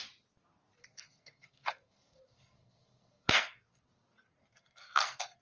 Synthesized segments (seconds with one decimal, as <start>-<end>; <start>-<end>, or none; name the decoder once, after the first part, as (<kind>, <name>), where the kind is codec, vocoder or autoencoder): 0.8-3.8 (codec, SNAC); 4.4-5.4